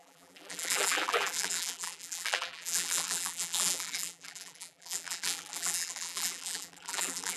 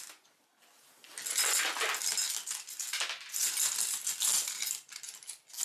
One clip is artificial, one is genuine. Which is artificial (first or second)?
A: first